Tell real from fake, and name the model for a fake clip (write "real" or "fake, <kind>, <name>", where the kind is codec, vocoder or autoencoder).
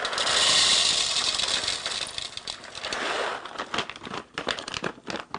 real